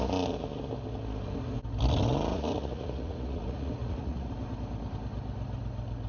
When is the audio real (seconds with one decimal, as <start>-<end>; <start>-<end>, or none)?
0.0-2.3; 4.3-6.1